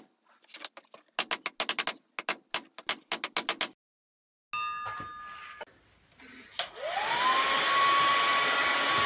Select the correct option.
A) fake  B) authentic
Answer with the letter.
B